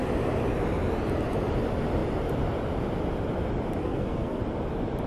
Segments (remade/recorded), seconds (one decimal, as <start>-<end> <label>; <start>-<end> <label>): 0.0-3.8 recorded; 3.8-4.4 remade; 4.4-5.1 recorded